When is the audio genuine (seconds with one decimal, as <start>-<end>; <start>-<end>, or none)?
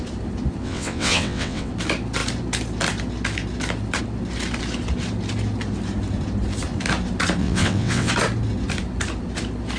0.0-0.6; 1.7-7.4; 8.1-9.8